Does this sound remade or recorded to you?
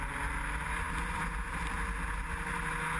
recorded